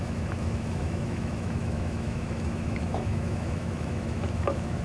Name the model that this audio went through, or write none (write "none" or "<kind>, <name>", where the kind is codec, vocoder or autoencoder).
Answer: autoencoder, DAC-VAE